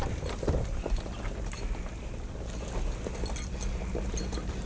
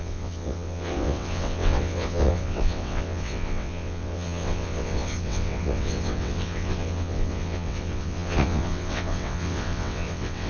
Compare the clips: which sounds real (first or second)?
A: first